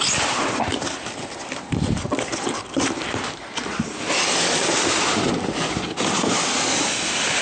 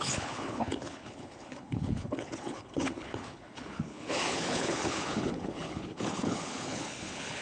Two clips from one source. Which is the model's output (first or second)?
second